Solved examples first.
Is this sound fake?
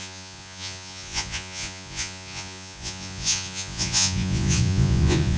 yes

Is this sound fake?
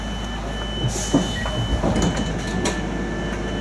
no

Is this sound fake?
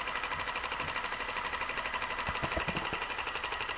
no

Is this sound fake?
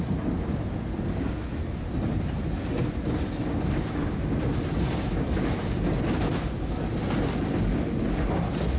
no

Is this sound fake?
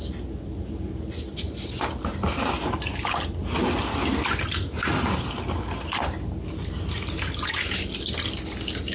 no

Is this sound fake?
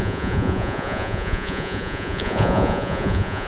yes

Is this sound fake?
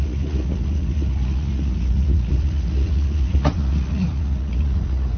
yes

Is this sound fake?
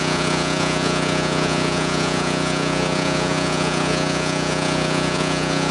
yes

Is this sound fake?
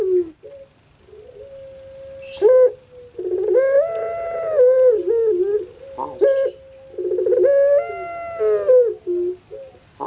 no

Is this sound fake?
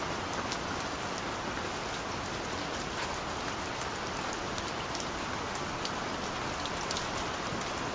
no